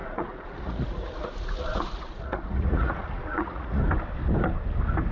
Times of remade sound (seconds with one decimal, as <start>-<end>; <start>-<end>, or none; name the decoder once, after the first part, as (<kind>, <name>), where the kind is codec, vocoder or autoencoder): 0.0-3.8 (vocoder, Vocos)